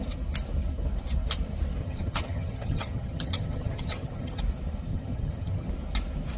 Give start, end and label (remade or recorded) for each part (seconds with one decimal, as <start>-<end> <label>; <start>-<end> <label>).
0.0-1.8 recorded; 1.8-4.4 remade; 4.4-4.9 recorded; 4.9-5.7 remade; 5.7-6.4 recorded